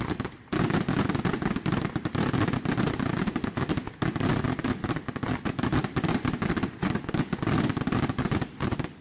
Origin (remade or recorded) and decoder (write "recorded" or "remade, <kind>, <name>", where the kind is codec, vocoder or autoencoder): recorded